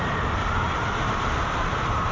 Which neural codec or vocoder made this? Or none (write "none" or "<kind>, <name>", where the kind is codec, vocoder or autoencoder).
none